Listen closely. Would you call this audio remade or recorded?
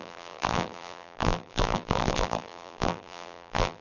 remade